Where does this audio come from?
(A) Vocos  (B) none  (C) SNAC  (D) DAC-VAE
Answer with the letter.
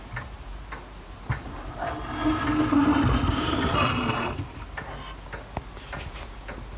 B